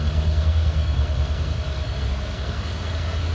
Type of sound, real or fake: fake